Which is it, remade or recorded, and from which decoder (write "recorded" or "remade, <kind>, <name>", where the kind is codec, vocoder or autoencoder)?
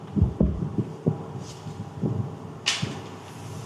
recorded